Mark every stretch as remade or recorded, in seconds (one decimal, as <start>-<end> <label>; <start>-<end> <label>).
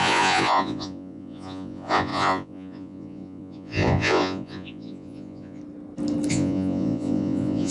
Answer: 0.0-5.6 remade; 5.6-6.3 recorded; 6.3-7.7 remade